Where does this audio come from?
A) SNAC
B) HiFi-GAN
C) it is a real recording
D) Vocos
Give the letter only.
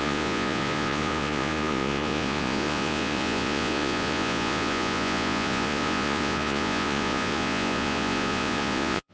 D